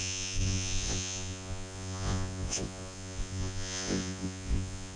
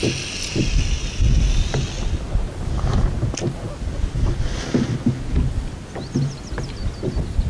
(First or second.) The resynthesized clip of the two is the first